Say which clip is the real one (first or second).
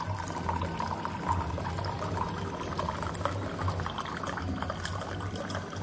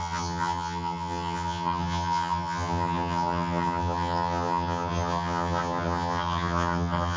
first